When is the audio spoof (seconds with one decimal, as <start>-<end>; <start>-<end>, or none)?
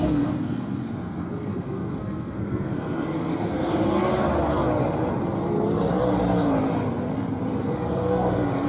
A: 0.0-3.8; 7.6-8.7